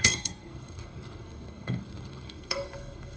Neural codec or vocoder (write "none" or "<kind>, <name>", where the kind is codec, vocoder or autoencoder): codec, SNAC